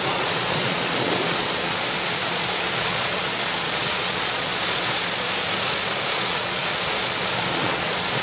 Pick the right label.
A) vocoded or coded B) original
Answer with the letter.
A